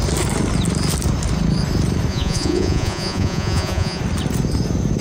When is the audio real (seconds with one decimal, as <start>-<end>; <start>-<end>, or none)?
0.0-2.1; 4.0-5.0